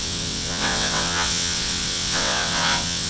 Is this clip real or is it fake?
fake